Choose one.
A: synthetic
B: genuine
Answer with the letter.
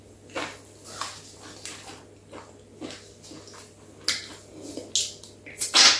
B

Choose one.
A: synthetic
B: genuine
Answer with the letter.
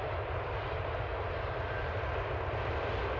B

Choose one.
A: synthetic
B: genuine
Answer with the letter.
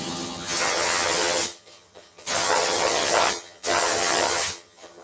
A